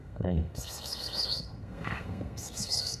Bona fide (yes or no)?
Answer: no